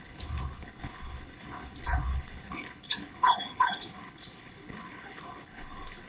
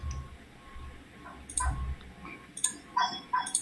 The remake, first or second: first